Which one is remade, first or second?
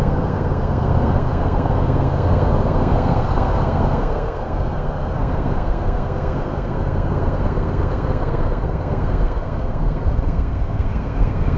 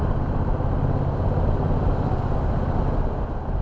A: first